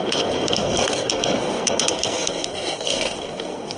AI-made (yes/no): yes